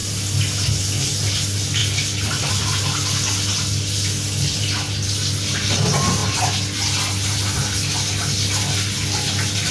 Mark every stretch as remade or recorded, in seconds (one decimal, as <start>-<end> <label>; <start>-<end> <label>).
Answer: 0.0-9.7 recorded